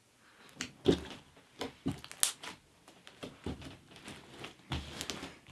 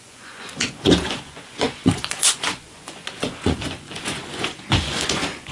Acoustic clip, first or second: first